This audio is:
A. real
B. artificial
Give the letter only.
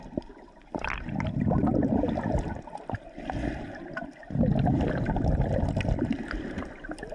A